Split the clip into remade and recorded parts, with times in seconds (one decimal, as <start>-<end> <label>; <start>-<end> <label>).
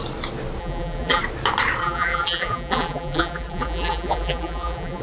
0.0-0.6 recorded; 0.6-1.2 remade; 1.2-1.8 recorded; 1.8-5.0 remade